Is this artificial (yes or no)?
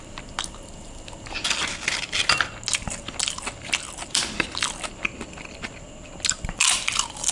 no